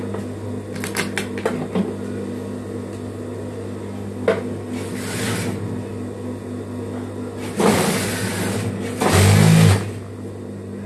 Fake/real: real